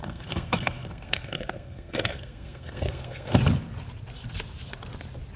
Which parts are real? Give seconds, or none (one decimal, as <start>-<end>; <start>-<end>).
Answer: 3.4-5.4